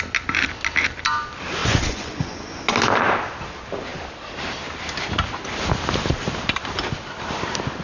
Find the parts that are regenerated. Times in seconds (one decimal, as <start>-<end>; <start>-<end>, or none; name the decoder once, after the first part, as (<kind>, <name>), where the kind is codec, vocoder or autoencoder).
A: 1.6-2.6 (vocoder, Vocos)